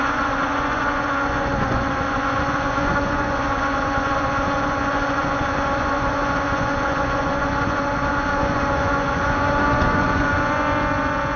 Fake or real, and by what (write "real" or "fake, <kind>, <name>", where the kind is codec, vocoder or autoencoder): fake, vocoder, Vocos